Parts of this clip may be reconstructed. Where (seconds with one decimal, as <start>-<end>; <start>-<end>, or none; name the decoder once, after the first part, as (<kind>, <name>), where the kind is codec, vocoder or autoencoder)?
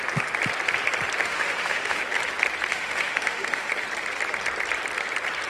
1.2-2.0 (autoencoder, DAC-VAE); 2.7-3.7